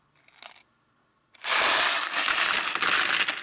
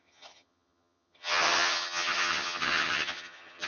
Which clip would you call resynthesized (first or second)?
second